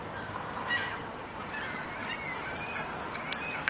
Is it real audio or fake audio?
real